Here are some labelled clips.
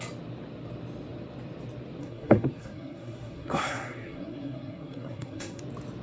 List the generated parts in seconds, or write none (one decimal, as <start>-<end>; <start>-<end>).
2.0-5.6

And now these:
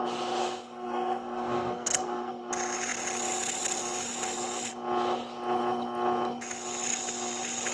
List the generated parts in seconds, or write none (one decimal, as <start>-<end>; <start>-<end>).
0.4-2.5

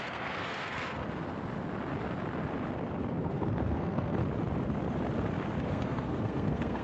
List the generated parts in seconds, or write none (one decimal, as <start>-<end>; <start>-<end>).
0.0-1.0; 3.2-4.2; 5.6-6.8